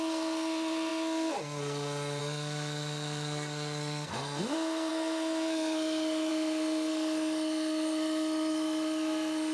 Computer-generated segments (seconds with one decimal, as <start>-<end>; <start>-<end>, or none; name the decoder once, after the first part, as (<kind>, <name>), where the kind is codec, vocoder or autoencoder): 0.0-9.5 (codec, SNAC)